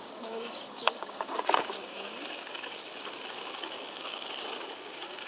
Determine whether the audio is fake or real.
fake